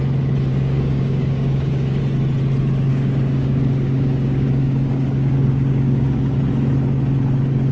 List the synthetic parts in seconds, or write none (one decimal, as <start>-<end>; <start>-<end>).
0.5-2.0; 2.9-6.4